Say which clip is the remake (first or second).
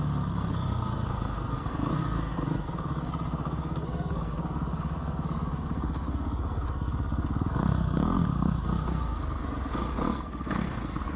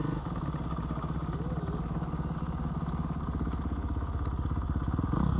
first